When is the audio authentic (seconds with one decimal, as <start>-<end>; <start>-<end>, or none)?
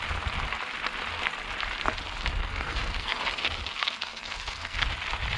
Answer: 0.0-2.4; 4.9-5.4